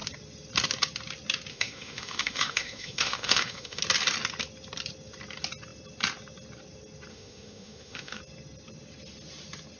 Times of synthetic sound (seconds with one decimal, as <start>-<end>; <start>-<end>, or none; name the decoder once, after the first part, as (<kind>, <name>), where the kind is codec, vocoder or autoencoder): 1.5-3.8 (autoencoder, DAC-VAE); 7.1-8.2